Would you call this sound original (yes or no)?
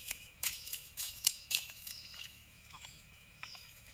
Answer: no